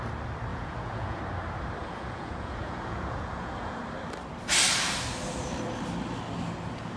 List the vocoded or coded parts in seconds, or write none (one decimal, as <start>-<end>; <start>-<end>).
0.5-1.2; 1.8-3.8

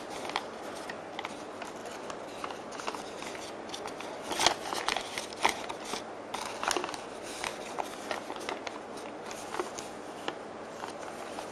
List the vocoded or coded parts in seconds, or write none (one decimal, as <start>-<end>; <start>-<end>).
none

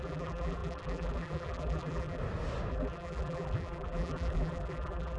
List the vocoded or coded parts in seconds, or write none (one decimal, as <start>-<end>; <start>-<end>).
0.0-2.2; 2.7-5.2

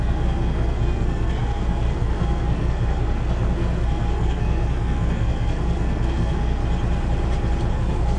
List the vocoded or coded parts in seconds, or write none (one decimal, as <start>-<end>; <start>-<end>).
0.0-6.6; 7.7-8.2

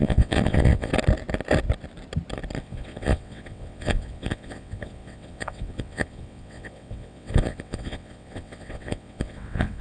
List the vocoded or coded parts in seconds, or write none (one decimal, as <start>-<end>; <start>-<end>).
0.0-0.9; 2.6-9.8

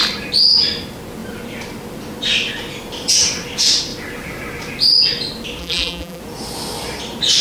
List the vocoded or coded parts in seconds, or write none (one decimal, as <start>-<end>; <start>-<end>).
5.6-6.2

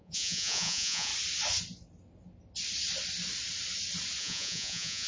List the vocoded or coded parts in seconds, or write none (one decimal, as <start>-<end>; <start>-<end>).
0.0-1.1; 4.2-5.1